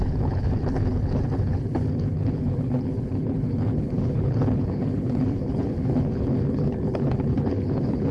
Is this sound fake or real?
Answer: fake